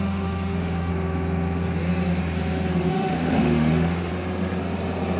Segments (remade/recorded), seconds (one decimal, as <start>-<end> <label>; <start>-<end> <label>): 0.0-0.9 remade; 0.9-2.9 recorded; 2.9-4.1 remade; 4.1-5.2 recorded